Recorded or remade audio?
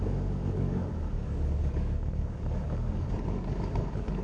remade